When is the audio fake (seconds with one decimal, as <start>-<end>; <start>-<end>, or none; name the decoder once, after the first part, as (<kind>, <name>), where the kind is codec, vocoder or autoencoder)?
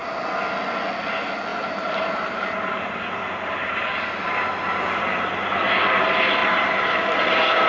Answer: 1.5-5.3 (vocoder, BigVGAN v2); 6.4-7.7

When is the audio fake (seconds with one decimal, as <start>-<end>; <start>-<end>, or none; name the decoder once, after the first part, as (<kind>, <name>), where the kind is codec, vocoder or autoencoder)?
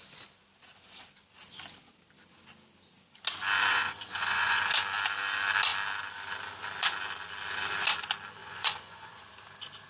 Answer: 3.7-4.6 (vocoder, Vocos); 8.4-9.2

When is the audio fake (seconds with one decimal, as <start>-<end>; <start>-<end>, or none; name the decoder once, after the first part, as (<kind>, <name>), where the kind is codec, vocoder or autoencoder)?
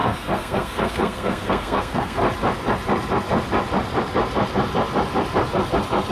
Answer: 0.0-2.2 (codec, SNAC)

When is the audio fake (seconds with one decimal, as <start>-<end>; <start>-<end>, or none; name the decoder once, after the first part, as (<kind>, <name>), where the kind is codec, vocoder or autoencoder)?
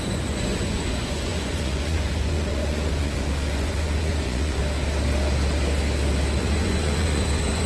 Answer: 0.0-4.6 (vocoder, Vocos); 6.4-7.7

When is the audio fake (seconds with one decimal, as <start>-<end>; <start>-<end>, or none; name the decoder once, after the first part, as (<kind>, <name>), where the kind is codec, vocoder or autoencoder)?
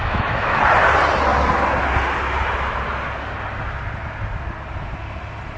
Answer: 0.0-0.6 (autoencoder, DAC-VAE)